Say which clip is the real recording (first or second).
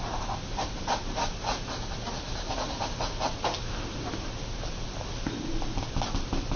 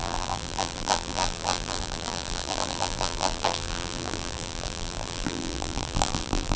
first